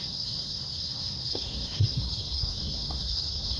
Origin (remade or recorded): remade